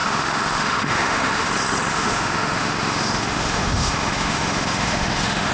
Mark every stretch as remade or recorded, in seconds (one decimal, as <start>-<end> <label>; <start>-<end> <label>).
0.0-1.5 remade; 1.5-1.9 recorded; 1.9-5.5 remade